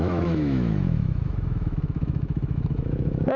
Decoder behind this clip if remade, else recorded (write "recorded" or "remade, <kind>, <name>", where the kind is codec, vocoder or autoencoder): remade, autoencoder, DAC-VAE